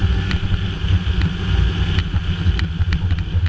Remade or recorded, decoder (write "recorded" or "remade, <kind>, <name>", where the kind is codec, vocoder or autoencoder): recorded